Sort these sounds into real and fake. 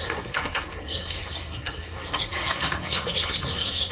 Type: fake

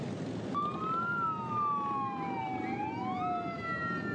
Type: real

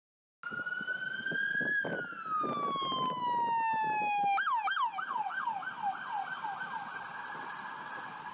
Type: real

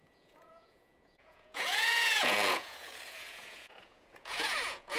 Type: fake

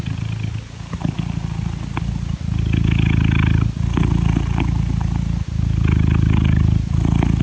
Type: real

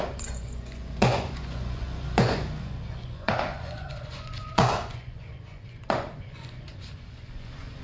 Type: fake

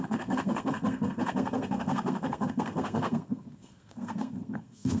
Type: fake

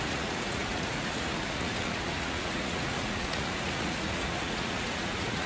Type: fake